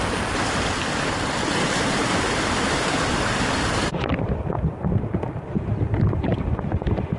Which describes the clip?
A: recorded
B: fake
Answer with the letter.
B